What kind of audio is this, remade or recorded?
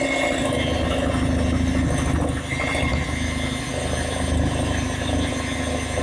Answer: recorded